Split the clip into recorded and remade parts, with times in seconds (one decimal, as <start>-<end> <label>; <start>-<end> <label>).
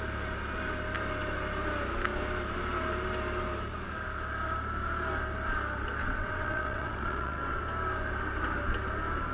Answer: 0.0-6.0 recorded; 6.0-7.6 remade; 7.6-9.3 recorded